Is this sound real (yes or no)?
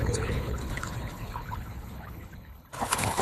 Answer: no